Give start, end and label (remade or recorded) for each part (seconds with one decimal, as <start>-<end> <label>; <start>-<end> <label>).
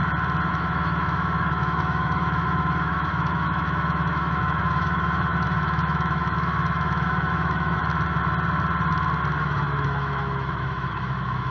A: 0.0-0.5 recorded; 0.5-7.8 remade; 7.8-9.4 recorded; 9.4-11.5 remade